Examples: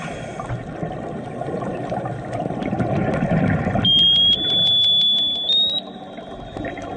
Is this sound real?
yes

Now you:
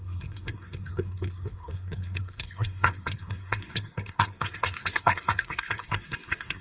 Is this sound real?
no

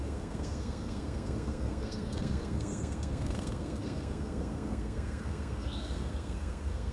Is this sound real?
no